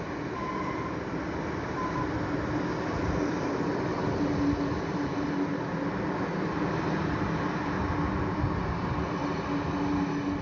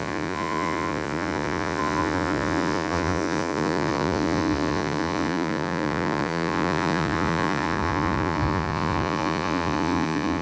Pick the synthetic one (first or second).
second